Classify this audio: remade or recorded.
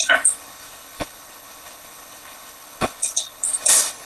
remade